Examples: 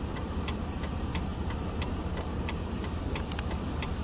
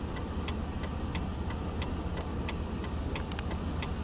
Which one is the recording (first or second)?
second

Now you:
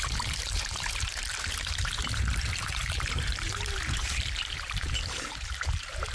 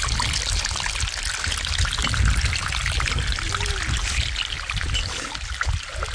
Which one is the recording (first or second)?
second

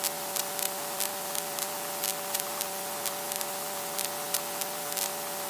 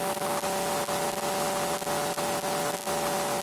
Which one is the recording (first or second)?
second